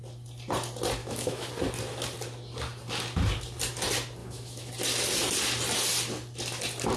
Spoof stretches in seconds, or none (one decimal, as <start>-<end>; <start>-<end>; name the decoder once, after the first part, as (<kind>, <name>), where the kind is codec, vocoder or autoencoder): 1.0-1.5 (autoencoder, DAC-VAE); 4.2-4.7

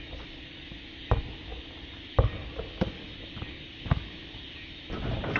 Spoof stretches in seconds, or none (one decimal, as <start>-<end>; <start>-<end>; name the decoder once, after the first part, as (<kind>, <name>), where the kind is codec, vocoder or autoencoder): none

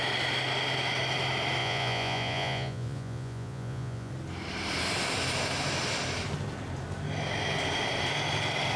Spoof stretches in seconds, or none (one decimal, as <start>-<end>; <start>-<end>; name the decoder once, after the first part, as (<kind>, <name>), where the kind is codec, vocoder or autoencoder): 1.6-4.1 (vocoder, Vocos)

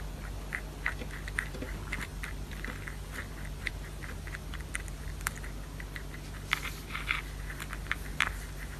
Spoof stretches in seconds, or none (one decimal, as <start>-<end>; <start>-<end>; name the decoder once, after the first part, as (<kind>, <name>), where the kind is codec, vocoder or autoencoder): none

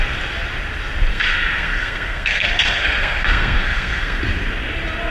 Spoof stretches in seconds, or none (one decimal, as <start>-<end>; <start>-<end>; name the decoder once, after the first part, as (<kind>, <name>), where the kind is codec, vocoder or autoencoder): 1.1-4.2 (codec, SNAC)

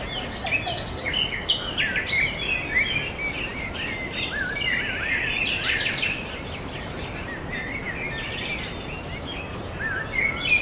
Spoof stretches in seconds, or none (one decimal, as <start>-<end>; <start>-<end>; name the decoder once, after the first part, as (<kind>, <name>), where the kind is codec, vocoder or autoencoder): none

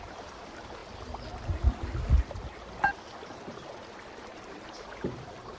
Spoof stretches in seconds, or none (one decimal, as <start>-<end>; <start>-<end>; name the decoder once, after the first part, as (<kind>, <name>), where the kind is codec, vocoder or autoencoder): 0.0-0.8 (vocoder, BigVGAN v2); 4.2-5.6

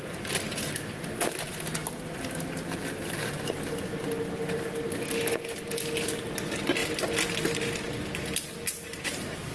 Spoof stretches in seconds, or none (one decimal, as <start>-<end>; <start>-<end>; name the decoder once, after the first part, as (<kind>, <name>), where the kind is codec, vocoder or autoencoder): 8.5-9.5 (vocoder, BigVGAN v2)